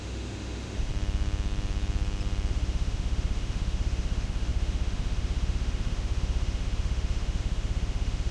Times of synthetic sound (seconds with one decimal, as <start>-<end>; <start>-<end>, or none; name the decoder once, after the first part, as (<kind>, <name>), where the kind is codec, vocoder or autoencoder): 0.0-0.9 (autoencoder, DAC-VAE); 2.5-8.3